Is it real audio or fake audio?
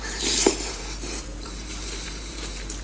fake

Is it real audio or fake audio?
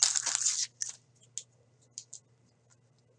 real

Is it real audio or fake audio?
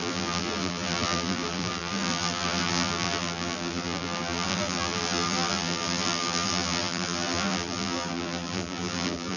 fake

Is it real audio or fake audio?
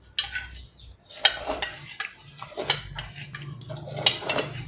real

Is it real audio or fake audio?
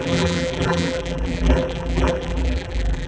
fake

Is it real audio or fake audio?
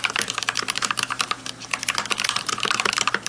fake